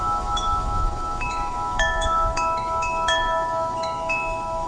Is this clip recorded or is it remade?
remade